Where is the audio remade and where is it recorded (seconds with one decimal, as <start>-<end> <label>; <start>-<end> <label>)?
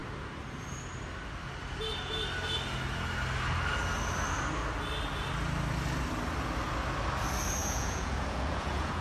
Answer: 0.0-7.6 recorded; 7.6-9.0 remade